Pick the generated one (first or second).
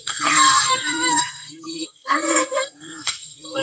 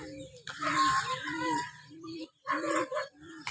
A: first